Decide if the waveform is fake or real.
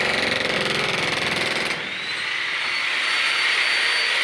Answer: real